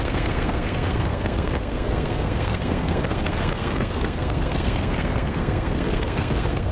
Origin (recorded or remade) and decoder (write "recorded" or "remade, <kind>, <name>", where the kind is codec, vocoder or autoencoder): remade, codec, SNAC